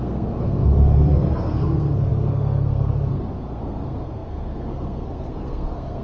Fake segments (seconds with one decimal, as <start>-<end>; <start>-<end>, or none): 0.0-6.0